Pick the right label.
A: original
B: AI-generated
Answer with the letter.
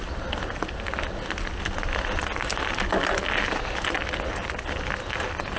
A